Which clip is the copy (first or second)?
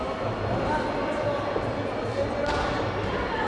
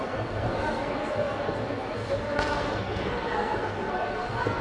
second